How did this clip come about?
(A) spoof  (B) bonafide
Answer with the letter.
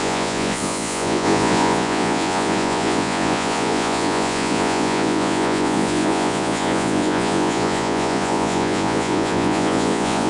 A